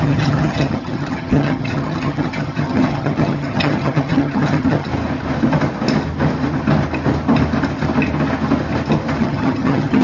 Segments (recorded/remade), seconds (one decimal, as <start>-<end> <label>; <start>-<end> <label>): 0.0-4.9 remade; 4.9-9.2 recorded; 9.2-10.0 remade